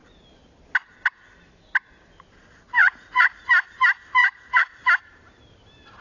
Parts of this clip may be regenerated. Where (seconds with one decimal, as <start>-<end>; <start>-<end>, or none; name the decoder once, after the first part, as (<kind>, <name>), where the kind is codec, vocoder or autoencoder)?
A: 2.8-3.5 (vocoder, Vocos); 4.2-4.8